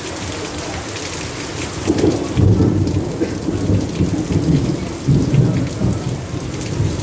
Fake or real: real